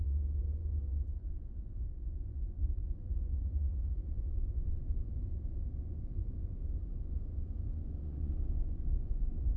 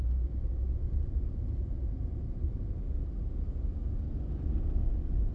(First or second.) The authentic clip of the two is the second